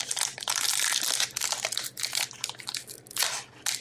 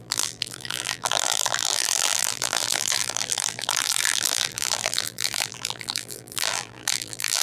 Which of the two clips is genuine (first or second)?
first